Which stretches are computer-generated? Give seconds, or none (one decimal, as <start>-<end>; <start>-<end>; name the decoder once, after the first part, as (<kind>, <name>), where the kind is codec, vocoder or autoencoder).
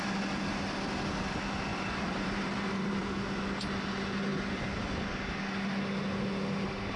1.7-3.0 (vocoder, BigVGAN v2); 4.3-4.9